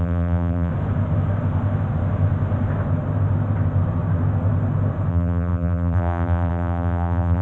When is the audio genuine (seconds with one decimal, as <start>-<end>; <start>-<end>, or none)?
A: 0.7-5.1